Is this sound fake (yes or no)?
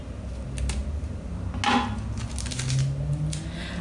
no